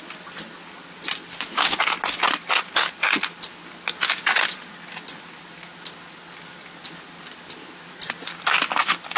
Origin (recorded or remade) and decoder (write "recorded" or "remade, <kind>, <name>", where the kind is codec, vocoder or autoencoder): recorded